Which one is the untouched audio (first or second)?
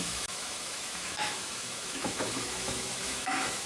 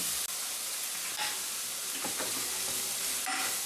second